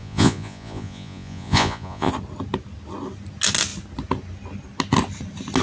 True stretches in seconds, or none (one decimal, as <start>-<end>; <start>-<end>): 2.1-5.6